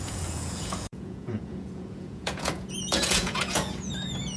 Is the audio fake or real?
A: fake